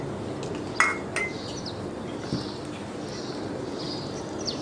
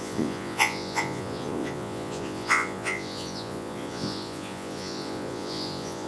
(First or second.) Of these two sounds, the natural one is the first